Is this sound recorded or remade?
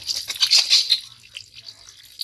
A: recorded